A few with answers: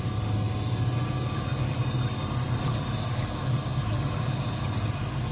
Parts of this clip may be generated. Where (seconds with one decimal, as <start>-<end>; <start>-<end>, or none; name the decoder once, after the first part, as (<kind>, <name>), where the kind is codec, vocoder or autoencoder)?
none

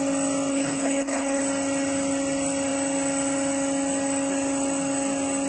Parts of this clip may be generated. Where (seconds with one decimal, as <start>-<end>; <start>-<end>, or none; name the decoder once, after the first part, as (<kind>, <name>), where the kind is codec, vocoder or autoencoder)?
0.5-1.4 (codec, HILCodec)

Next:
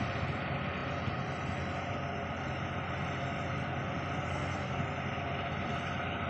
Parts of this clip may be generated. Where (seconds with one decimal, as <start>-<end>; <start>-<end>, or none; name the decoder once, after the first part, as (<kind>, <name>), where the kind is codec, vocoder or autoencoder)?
4.3-4.8 (codec, SNAC)

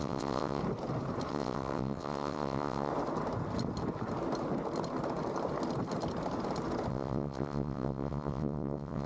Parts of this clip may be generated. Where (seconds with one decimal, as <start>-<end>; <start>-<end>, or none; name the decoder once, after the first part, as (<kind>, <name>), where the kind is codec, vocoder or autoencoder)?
0.0-0.6 (vocoder, WaveNeXt); 1.3-2.9; 6.9-9.1

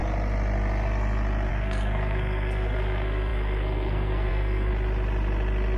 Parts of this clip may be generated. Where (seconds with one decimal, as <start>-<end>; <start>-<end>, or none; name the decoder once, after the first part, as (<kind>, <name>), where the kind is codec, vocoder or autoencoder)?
1.5-4.7 (codec, SNAC)

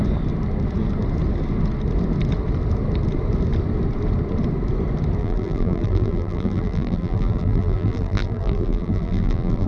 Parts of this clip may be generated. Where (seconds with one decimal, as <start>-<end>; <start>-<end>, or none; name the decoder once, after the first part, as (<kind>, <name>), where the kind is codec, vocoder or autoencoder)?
5.2-9.7 (vocoder, BigVGAN v2)

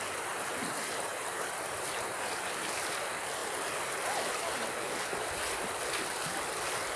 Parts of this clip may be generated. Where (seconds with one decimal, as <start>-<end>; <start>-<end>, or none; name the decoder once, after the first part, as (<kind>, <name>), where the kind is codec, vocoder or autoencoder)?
1.1-2.4 (vocoder, BigVGAN v2)